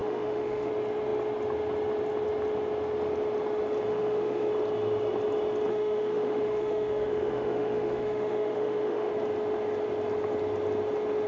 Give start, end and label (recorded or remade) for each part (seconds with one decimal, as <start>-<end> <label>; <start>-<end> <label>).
0.0-0.7 remade; 0.7-3.9 recorded; 3.9-4.5 remade; 4.5-5.7 recorded; 5.7-9.1 remade; 9.1-11.3 recorded